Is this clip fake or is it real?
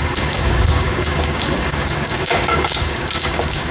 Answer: fake